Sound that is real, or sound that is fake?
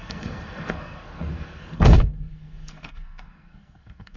fake